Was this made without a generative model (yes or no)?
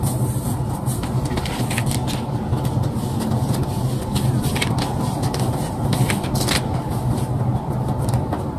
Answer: yes